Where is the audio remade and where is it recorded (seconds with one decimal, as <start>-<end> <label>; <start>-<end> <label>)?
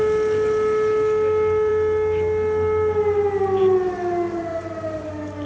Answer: 0.0-4.5 recorded; 4.5-5.1 remade; 5.1-5.5 recorded